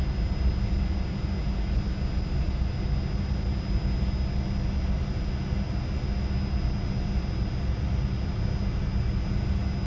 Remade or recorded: recorded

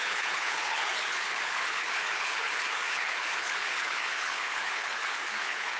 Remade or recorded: remade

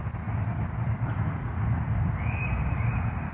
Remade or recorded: recorded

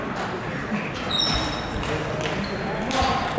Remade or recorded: recorded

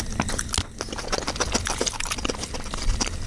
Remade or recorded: recorded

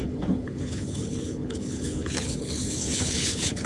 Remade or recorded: remade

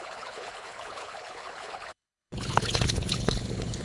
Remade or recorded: remade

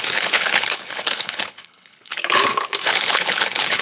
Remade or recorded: remade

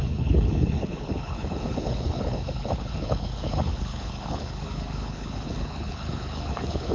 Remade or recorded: remade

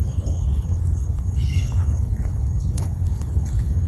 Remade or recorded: remade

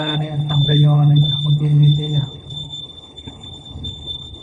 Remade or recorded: remade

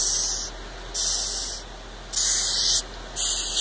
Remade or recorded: recorded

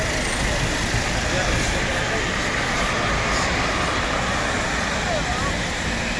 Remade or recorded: recorded